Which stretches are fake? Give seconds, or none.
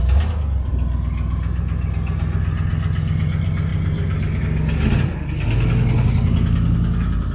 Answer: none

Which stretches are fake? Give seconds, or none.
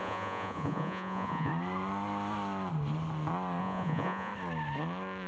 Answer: 0.0-1.5 (vocoder, Vocos); 3.6-4.3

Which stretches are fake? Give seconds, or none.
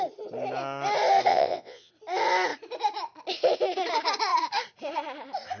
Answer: 1.3-1.9 (vocoder, WaveNeXt)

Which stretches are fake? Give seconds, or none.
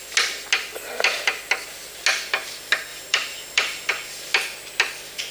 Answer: 2.9-3.9 (vocoder, BigVGAN v2)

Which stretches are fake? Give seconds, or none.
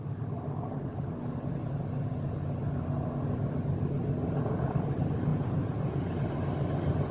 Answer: 1.6-2.3 (vocoder, Vocos); 4.2-4.7; 5.3-6.1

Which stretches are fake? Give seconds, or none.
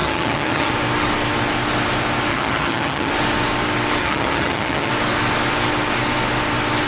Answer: 0.0-0.7 (vocoder, HiFi-GAN); 2.3-3.1; 4.0-4.9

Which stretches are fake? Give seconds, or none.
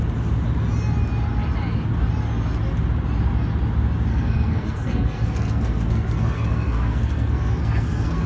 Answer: 4.1-8.3 (codec, SNAC)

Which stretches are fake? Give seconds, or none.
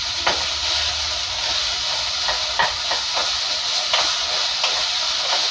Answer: none